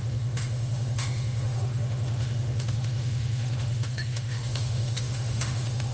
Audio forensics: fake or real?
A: fake